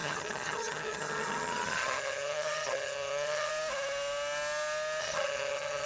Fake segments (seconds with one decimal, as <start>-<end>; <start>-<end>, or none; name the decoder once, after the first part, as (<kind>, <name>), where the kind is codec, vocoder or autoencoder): 0.0-3.5 (vocoder, HiFi-GAN); 5.0-5.9